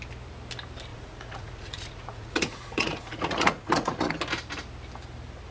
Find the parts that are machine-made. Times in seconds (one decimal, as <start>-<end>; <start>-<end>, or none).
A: 0.9-4.1